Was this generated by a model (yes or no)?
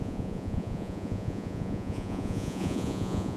yes